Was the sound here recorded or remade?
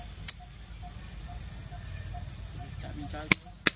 recorded